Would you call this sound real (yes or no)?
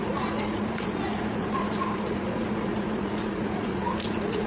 no